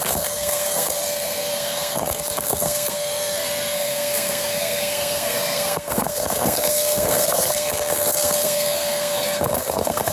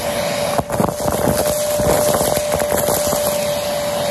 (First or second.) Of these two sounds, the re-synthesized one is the first